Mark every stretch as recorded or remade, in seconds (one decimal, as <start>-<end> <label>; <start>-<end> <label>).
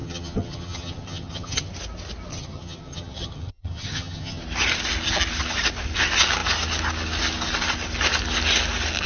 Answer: 0.0-1.7 remade; 1.7-2.3 recorded; 2.3-4.4 remade; 4.4-9.1 recorded